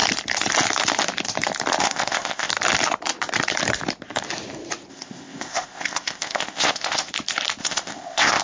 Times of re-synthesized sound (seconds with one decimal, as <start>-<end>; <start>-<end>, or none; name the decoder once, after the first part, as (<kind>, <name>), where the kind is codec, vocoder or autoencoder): 1.8-2.5 (codec, ZipCodec); 4.9-7.1; 7.6-8.4